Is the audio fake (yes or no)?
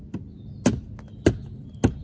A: no